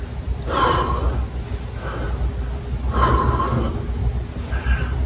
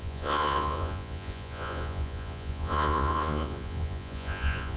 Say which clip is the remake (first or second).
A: second